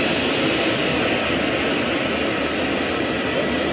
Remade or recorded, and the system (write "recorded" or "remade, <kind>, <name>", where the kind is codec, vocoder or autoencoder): recorded